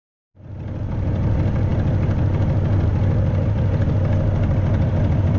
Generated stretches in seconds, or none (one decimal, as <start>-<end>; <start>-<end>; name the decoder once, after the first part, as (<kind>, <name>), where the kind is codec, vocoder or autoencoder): none